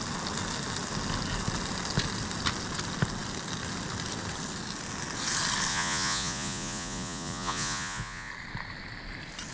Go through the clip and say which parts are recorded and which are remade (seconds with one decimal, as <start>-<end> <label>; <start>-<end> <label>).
0.0-5.7 recorded; 5.7-8.3 remade; 8.3-9.5 recorded